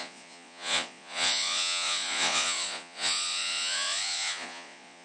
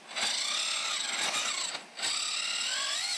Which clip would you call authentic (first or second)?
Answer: second